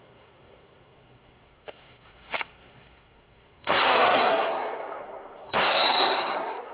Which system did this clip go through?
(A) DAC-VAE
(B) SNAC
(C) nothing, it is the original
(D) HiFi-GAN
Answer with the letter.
B